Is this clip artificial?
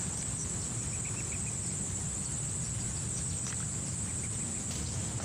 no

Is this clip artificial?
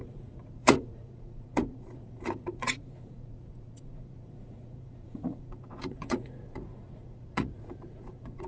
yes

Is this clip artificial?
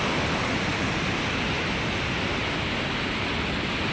no